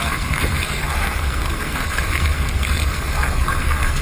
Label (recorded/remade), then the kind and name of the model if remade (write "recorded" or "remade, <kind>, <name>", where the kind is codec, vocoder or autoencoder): remade, codec, SNAC